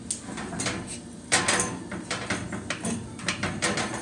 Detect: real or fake real